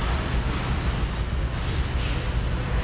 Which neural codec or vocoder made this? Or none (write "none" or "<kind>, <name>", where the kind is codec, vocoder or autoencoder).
none